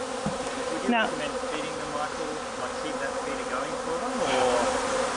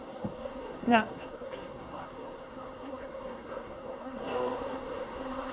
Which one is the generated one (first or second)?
second